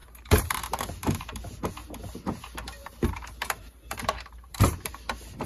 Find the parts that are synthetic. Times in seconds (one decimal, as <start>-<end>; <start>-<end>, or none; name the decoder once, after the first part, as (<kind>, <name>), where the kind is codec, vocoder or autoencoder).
0.0-1.7 (vocoder, BigVGAN v2); 2.8-4.9